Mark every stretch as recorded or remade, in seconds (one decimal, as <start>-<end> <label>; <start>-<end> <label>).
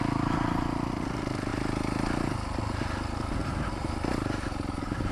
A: 0.0-1.5 recorded; 1.5-2.3 remade; 2.3-3.4 recorded; 3.4-5.1 remade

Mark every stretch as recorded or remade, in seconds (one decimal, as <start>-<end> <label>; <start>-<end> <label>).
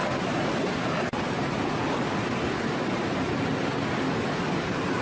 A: 0.0-5.0 recorded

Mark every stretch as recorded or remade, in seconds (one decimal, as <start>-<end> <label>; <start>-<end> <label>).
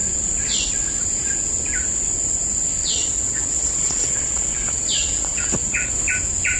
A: 0.0-2.8 recorded; 2.8-5.9 remade; 5.9-6.6 recorded